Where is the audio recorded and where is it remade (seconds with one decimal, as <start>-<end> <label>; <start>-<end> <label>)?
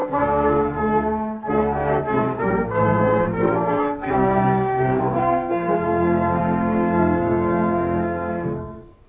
0.0-9.1 remade